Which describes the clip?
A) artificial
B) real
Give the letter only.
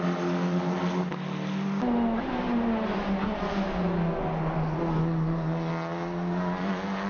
B